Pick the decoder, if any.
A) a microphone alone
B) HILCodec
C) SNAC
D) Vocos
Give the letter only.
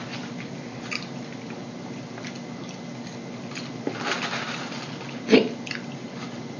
A